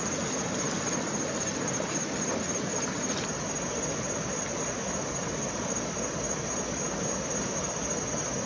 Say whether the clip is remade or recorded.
recorded